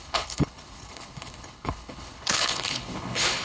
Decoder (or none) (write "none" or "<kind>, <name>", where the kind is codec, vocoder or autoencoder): codec, HILCodec